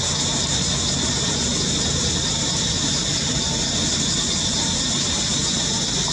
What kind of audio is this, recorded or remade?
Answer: recorded